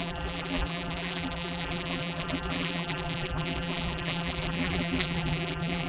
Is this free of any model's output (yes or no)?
no